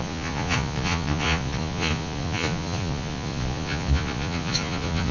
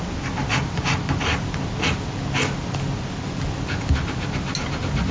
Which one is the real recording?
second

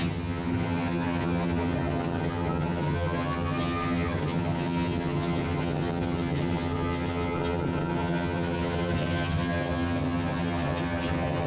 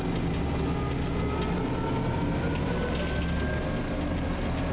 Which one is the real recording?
second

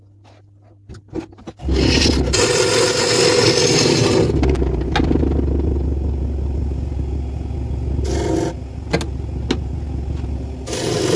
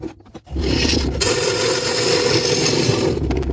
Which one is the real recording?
first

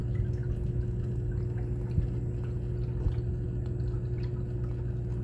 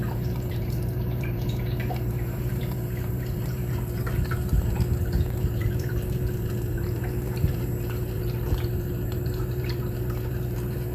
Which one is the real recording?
first